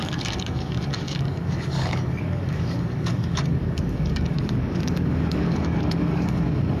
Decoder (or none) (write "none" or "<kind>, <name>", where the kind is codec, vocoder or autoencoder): codec, DAC